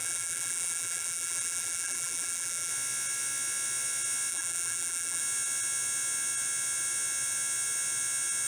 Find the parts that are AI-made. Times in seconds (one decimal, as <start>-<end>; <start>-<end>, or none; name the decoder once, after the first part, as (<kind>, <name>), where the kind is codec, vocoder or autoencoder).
0.0-2.7 (vocoder, BigVGAN v2); 4.3-5.2